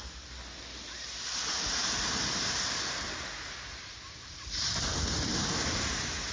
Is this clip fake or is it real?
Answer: real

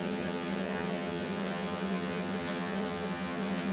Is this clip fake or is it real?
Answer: fake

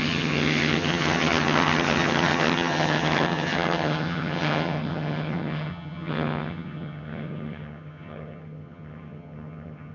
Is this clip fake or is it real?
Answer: fake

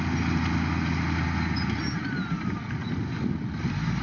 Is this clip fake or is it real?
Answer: real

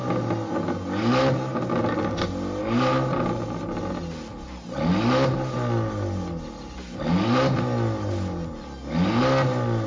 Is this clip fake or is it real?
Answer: real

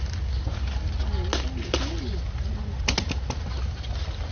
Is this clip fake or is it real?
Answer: real